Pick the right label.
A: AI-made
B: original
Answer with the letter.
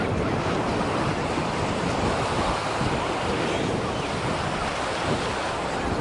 B